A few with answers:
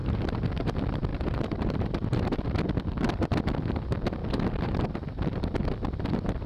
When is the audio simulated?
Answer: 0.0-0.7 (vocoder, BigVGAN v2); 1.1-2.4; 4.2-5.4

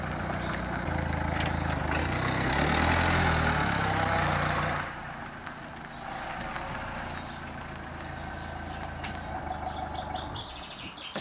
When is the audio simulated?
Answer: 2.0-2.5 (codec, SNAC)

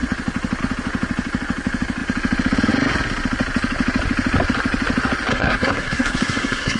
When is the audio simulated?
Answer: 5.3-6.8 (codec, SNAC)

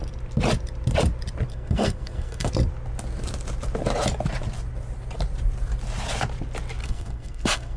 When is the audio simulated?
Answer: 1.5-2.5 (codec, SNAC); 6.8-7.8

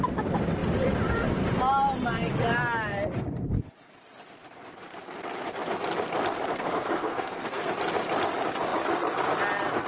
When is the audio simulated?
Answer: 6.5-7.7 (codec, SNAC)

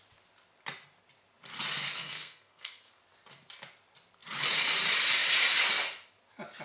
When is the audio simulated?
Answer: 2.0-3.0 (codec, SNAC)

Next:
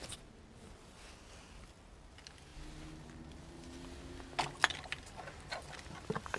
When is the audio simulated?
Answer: none